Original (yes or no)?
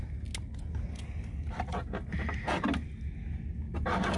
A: yes